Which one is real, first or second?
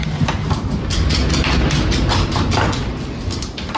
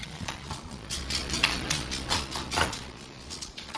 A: first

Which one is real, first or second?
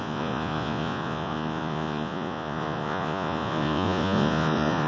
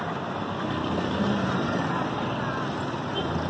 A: second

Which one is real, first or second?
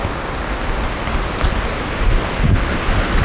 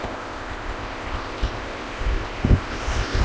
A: first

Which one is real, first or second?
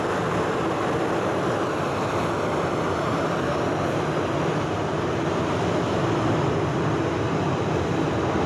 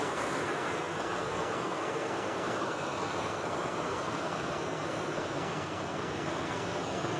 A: first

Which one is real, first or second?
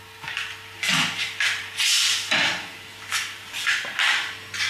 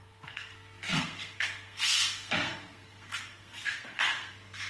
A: first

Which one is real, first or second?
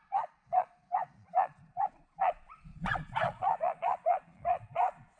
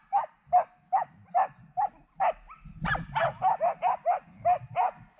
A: second